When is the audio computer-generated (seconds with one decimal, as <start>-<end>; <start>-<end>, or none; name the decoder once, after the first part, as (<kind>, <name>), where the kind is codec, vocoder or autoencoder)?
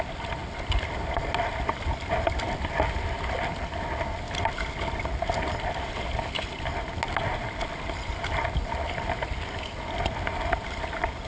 none